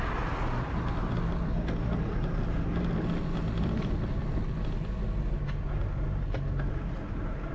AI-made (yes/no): no